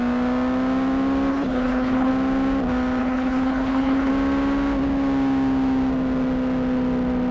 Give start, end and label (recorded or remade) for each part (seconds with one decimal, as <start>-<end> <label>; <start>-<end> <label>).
0.0-1.3 recorded; 1.3-2.1 remade; 2.1-3.0 recorded; 3.0-4.1 remade; 4.1-7.3 recorded